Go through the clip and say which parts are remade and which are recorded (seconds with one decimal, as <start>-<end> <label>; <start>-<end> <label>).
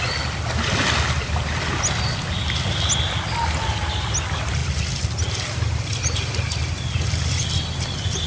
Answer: 0.0-8.3 recorded